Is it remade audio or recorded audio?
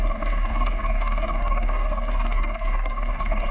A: remade